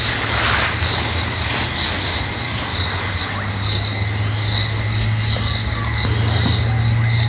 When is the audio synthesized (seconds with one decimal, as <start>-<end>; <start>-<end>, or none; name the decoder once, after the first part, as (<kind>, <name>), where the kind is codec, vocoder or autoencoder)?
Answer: none